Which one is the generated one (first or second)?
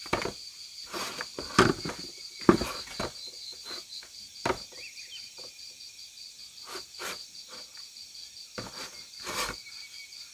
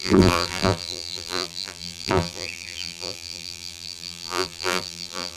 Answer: second